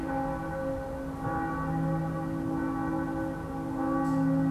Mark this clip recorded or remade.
recorded